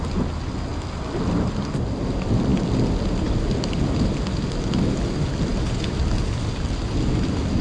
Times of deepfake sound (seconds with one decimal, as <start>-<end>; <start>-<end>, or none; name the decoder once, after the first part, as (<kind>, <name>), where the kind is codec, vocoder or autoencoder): none